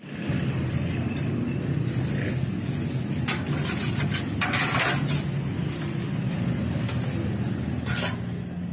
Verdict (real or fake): real